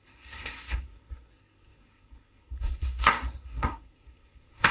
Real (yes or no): no